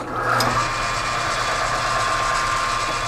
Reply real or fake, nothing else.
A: real